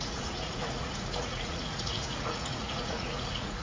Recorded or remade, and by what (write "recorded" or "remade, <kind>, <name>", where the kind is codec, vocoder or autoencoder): remade, vocoder, Vocos